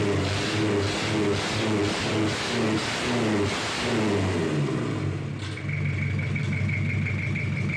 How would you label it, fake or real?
real